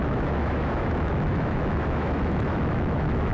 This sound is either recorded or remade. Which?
remade